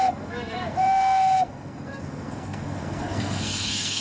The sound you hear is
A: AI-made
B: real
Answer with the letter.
A